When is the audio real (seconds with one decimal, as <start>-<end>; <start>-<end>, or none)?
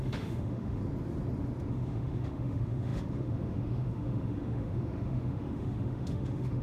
0.8-1.7